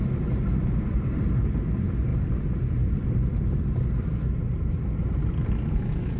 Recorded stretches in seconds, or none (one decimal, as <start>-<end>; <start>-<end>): 0.0-6.2